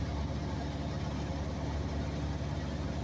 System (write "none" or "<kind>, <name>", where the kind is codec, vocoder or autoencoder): none